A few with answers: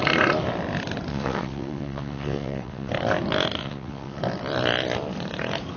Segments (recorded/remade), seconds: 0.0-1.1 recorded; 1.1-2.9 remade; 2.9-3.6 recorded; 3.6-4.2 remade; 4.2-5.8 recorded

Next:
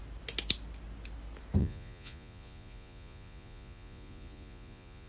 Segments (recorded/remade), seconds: 0.0-1.6 recorded; 1.6-5.1 remade

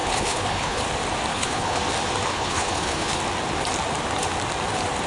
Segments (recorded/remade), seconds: 0.0-0.8 remade; 0.8-1.3 recorded; 1.3-1.8 remade; 1.8-2.3 recorded; 2.3-3.2 remade; 3.2-5.1 recorded

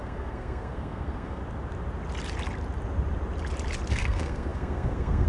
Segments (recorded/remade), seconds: 0.0-1.4 remade; 1.4-3.9 recorded; 3.9-5.3 remade

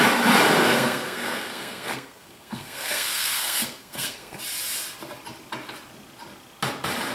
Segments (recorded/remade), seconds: 0.0-0.6 recorded; 0.6-4.4 remade; 4.4-7.1 recorded

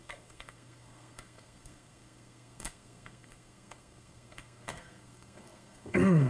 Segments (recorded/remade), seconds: 0.0-6.3 remade

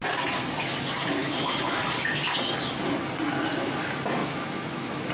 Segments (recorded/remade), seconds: 0.0-1.2 recorded; 1.2-1.8 remade; 1.8-4.2 recorded; 4.2-5.1 remade